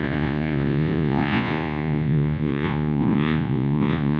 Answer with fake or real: fake